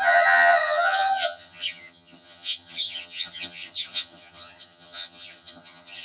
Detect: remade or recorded remade